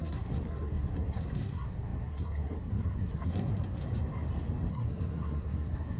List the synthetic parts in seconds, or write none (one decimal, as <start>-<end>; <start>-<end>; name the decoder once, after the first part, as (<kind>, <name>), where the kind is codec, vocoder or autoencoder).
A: 0.0-3.8 (codec, SNAC); 4.7-6.0

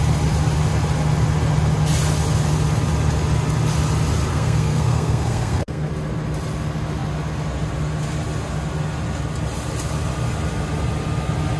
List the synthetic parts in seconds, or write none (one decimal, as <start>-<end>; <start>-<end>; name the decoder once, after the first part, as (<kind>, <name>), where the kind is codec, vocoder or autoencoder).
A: 4.3-5.9 (codec, SNAC)

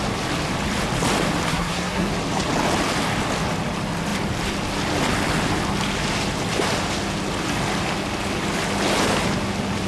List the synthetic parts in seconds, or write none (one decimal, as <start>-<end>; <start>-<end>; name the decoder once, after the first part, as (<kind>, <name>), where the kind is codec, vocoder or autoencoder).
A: 1.5-2.1 (codec, SNAC)